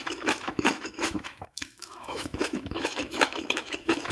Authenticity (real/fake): fake